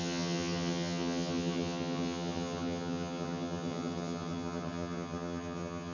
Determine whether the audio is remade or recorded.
remade